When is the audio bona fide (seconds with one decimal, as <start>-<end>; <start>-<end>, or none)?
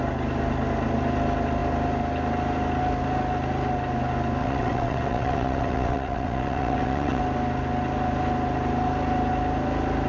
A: 0.0-4.4; 7.2-10.1